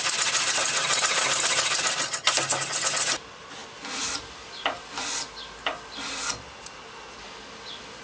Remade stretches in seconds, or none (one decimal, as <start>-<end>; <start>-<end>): none